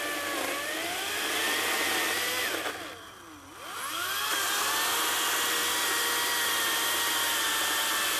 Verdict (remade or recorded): recorded